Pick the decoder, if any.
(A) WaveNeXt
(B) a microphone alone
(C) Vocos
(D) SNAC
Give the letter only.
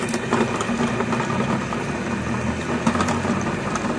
B